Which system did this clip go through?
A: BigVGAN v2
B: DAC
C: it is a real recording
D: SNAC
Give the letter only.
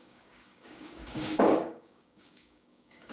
B